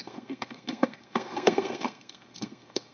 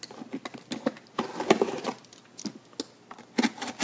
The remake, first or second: first